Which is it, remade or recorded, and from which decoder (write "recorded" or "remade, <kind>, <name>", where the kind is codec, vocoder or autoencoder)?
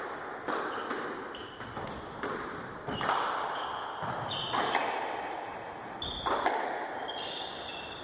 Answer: recorded